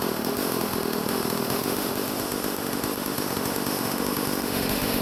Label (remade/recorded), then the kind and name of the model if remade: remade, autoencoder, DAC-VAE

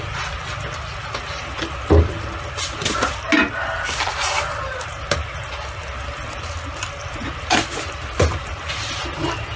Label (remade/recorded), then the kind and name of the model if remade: recorded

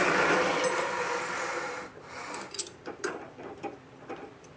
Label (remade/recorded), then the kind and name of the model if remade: remade, vocoder, BigVGAN v2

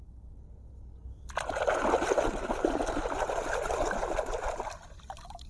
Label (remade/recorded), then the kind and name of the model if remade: recorded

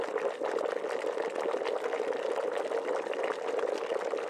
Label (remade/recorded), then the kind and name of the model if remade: recorded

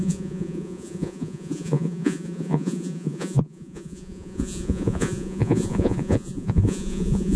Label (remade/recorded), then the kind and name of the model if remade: remade, vocoder, Vocos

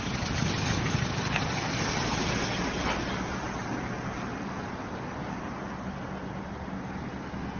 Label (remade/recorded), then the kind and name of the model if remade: recorded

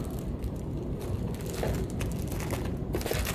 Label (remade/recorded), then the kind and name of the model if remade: recorded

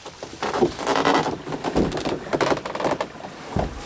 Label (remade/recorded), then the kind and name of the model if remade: recorded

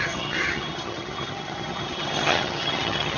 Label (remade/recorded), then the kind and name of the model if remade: remade, vocoder, HiFi-GAN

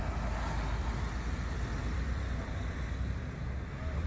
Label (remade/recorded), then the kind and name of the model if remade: recorded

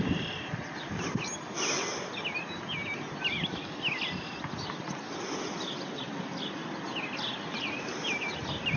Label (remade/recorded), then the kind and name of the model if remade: recorded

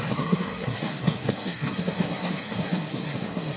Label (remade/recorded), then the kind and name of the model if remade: remade, codec, SNAC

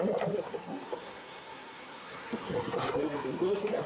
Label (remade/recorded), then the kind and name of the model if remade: remade, codec, SNAC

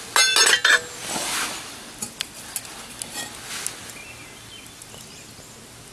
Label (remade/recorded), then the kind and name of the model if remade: recorded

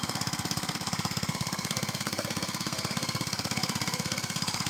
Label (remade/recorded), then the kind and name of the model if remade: remade, codec, SNAC